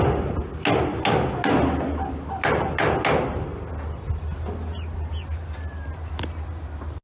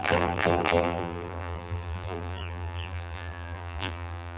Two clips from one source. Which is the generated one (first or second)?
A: second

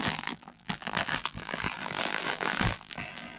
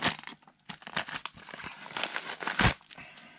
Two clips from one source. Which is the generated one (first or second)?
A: first